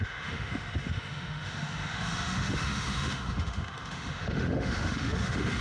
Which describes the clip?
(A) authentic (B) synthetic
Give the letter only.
B